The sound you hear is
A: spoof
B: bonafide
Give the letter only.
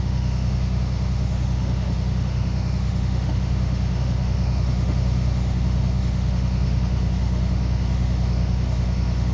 A